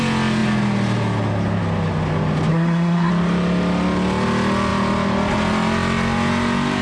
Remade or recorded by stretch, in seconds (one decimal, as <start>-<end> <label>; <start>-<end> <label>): 0.0-2.5 recorded; 2.5-3.1 remade; 3.1-6.8 recorded